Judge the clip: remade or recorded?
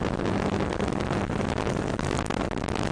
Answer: recorded